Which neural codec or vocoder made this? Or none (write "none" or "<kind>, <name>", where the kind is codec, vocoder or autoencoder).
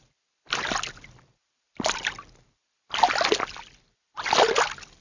none